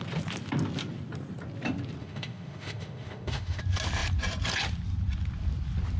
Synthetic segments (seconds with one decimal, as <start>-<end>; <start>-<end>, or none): 2.0-3.6